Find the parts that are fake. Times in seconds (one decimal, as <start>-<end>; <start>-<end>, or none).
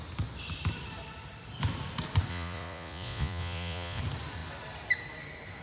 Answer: 2.3-4.0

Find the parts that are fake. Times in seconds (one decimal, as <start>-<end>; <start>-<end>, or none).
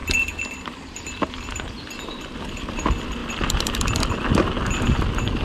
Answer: 0.0-2.0; 3.2-4.0